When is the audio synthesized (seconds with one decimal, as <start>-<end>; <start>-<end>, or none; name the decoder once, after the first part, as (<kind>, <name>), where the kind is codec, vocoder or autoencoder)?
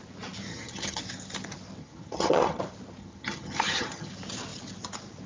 0.5-1.0 (vocoder, HiFi-GAN); 1.8-2.6; 3.0-4.1